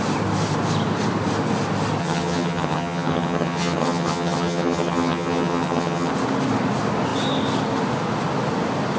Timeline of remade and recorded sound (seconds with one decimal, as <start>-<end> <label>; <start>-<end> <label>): 0.0-2.0 recorded; 2.0-6.1 remade; 6.1-9.0 recorded